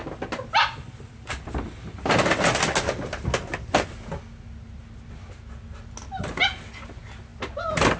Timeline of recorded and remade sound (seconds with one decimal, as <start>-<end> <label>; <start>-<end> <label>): 0.0-8.0 recorded